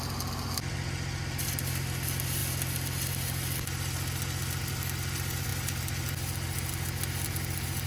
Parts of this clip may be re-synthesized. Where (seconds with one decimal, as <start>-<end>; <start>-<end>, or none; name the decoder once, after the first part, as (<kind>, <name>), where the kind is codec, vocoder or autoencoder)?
none